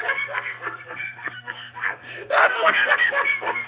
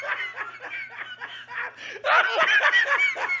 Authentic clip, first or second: second